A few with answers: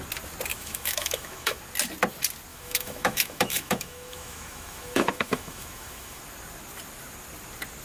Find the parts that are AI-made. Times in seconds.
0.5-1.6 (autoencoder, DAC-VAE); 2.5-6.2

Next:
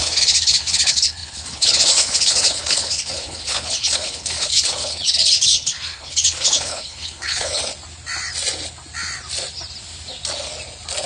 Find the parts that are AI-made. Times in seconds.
0.0-7.6 (codec, HILCodec)

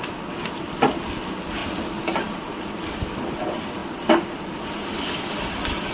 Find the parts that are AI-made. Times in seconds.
none

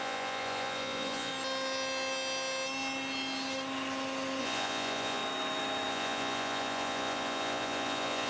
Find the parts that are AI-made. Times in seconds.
0.0-1.3 (vocoder, Vocos); 4.4-5.2; 5.9-8.3